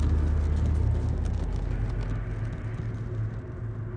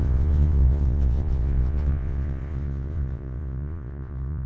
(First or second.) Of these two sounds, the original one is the first